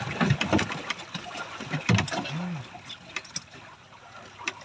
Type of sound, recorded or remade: recorded